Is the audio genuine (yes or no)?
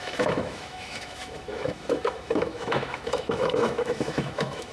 no